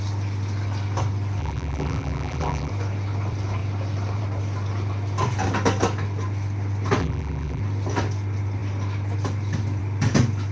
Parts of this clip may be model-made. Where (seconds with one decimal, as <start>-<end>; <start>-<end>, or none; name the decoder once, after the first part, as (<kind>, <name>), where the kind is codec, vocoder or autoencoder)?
1.4-2.7 (vocoder, BigVGAN v2); 7.0-7.6